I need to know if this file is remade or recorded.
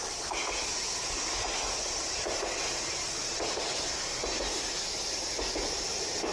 recorded